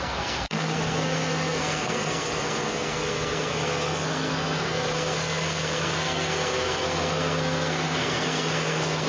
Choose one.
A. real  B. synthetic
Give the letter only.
B